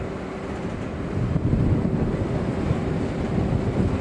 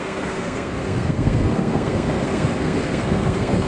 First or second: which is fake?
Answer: second